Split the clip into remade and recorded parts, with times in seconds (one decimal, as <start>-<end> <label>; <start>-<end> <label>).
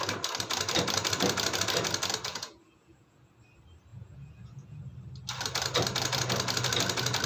0.0-2.3 recorded; 2.3-3.3 remade; 3.3-3.9 recorded; 3.9-4.8 remade; 4.8-7.3 recorded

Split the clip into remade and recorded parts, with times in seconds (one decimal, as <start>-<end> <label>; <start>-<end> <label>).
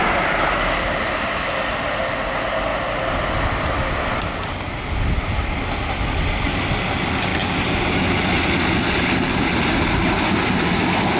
0.0-11.2 recorded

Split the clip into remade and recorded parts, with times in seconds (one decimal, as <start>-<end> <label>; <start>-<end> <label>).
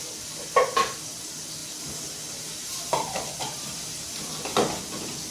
0.0-5.3 recorded